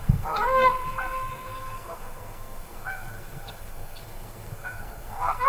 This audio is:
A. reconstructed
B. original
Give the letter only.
A